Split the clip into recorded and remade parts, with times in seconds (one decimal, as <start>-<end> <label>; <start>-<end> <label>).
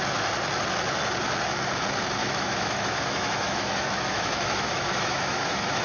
0.0-2.2 recorded; 2.2-5.8 remade